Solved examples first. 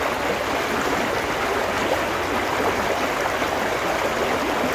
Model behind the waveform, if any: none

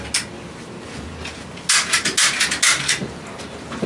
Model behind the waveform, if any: none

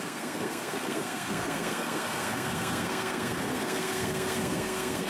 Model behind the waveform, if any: codec, SNAC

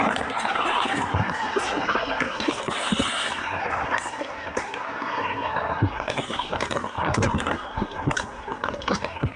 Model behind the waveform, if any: codec, SNAC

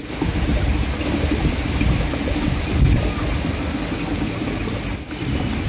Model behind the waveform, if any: none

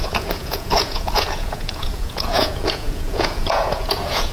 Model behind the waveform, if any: vocoder, Vocos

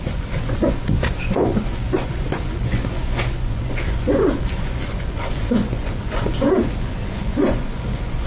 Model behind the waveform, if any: vocoder, Vocos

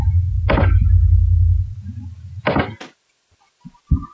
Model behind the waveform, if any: none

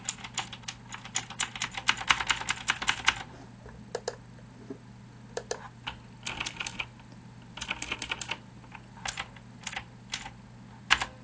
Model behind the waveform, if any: none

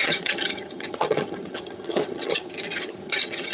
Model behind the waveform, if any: vocoder, HiFi-GAN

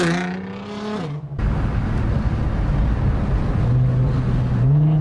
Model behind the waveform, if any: none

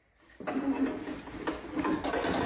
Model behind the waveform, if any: none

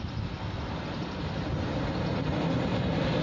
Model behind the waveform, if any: none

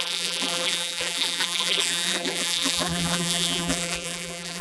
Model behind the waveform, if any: vocoder, BigVGAN v2